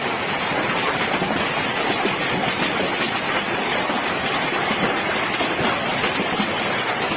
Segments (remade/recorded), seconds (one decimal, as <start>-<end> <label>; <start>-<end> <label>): 0.0-7.2 recorded